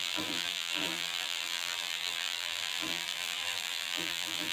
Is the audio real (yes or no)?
no